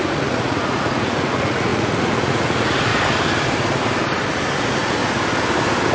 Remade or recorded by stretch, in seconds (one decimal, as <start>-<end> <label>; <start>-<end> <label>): 0.0-2.9 remade; 2.9-4.6 recorded; 4.6-5.0 remade; 5.0-5.9 recorded

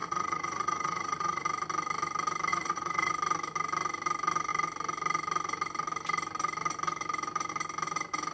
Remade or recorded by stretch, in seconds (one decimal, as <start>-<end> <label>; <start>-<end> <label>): 0.0-1.4 remade; 1.4-2.5 recorded; 2.5-3.1 remade; 3.1-8.3 recorded

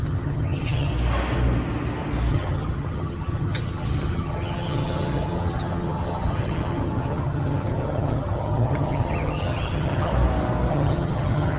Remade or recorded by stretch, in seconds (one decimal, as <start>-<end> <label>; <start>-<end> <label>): 0.0-0.9 remade; 0.9-2.3 recorded; 2.3-10.1 remade; 10.1-10.7 recorded; 10.7-11.6 remade

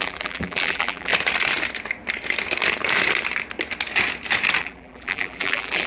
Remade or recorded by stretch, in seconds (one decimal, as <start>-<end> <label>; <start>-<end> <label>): 0.0-1.1 remade; 1.1-4.6 recorded; 4.6-5.9 remade

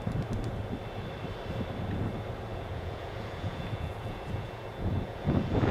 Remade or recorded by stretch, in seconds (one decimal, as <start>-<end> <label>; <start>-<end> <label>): 0.0-2.5 recorded; 2.5-5.7 remade

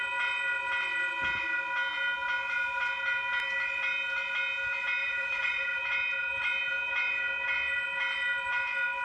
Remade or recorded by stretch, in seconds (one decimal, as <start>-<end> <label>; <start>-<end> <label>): 0.0-5.0 recorded; 5.0-5.8 remade; 5.8-9.0 recorded

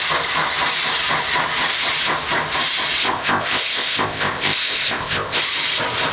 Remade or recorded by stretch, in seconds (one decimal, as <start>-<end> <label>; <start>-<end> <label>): 0.0-3.0 recorded; 3.0-5.4 remade; 5.4-6.1 recorded

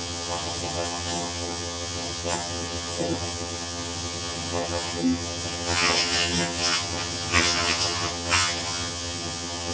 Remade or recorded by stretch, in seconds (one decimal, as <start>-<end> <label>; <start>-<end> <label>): 0.0-9.7 remade